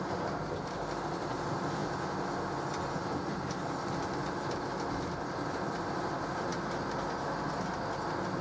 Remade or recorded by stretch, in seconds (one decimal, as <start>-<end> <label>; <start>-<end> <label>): 0.0-8.4 recorded